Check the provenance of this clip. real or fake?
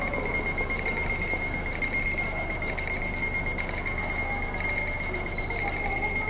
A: real